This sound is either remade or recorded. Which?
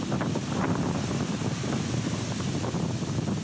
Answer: recorded